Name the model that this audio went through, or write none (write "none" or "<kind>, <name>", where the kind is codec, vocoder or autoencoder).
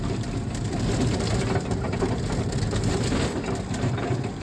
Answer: none